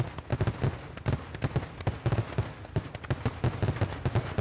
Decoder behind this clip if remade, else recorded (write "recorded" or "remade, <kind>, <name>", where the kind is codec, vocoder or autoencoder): recorded